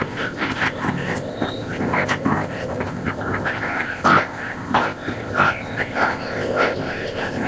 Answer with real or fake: fake